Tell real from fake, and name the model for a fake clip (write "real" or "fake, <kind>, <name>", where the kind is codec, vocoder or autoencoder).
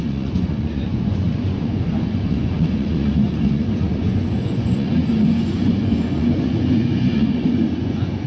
fake, vocoder, Vocos